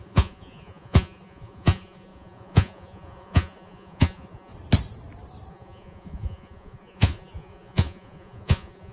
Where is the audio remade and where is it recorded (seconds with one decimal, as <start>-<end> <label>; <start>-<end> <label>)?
0.0-4.5 remade; 4.5-5.5 recorded; 5.5-8.9 remade